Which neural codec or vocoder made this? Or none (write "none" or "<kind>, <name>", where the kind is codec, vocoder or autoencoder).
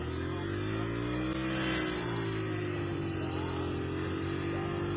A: none